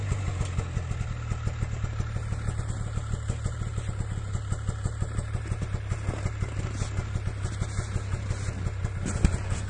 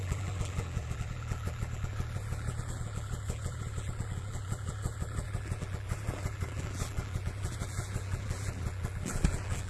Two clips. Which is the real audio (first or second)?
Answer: first